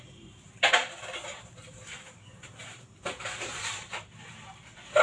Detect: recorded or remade remade